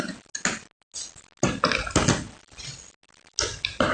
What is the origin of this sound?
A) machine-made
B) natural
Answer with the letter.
B